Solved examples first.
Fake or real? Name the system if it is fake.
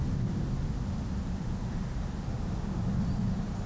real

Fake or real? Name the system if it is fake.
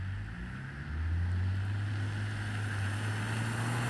real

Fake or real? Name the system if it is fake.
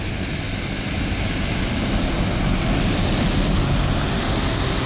real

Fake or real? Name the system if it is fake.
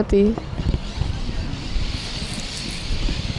real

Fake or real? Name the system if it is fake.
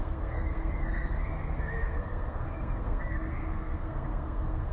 fake, codec, SNAC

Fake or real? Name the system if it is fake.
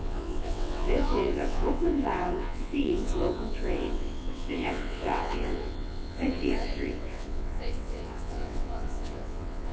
fake, vocoder, WaveNeXt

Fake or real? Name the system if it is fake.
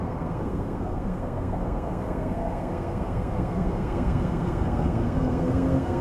fake, codec, SNAC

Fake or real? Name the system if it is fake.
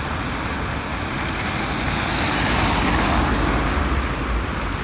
real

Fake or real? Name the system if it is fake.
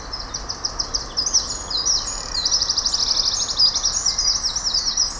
real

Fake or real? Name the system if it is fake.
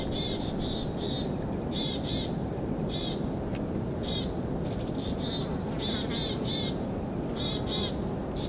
real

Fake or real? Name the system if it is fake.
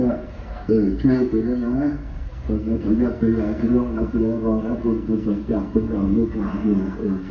fake, codec, SNAC